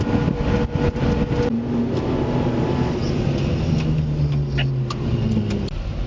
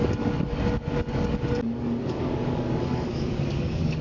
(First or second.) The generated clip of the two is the second